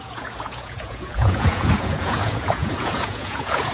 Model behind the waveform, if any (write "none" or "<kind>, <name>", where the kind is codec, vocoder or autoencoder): vocoder, Vocos